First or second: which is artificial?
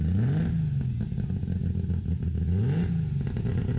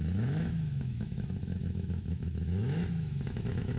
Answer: second